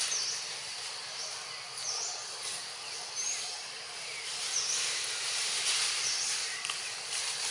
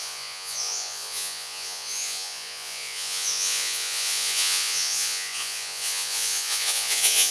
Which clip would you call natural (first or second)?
first